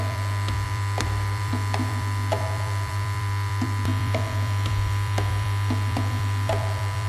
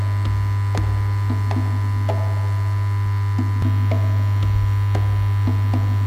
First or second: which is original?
second